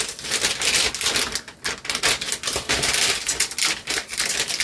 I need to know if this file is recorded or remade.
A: recorded